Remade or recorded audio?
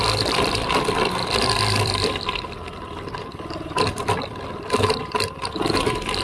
remade